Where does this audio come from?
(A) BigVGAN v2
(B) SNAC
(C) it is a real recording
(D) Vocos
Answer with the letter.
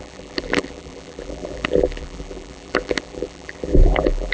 A